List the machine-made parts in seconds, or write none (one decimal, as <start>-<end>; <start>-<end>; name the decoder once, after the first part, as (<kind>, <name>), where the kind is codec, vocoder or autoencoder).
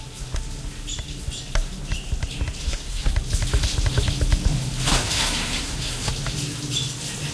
2.6-3.1 (codec, SNAC); 4.9-6.1